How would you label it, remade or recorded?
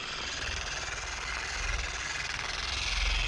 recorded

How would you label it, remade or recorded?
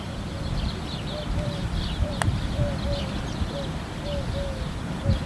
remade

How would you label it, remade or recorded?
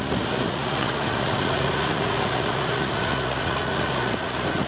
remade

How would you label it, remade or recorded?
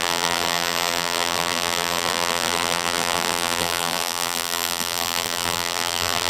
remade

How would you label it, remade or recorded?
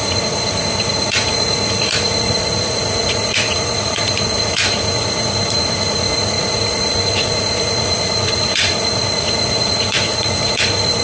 remade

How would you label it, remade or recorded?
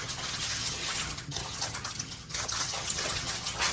remade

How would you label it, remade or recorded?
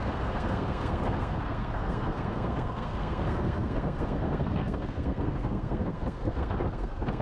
remade